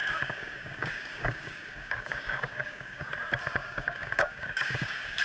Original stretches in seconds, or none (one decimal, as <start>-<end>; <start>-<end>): 3.1-3.6